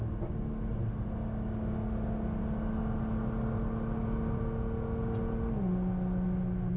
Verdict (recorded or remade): recorded